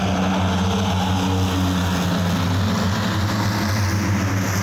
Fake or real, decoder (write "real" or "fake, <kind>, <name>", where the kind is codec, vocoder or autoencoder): real